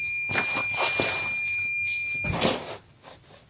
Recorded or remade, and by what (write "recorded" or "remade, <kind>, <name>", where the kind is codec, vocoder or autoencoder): recorded